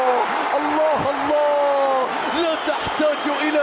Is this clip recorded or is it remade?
recorded